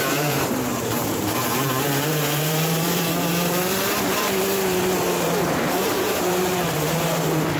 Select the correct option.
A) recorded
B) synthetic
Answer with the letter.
B